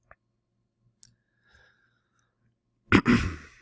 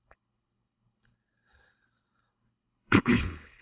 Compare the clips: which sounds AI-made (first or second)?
second